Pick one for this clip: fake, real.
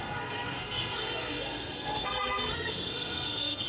fake